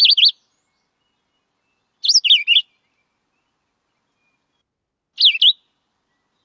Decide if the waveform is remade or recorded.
recorded